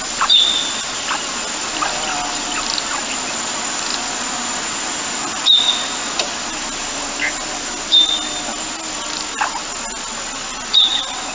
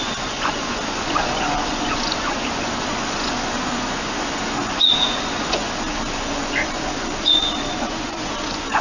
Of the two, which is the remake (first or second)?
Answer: second